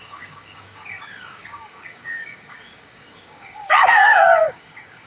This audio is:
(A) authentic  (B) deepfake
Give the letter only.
B